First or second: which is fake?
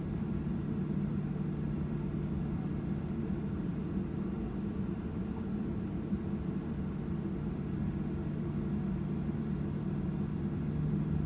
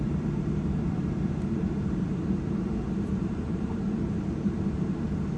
second